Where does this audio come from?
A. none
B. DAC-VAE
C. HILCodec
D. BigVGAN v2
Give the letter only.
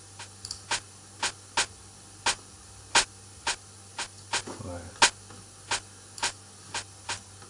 A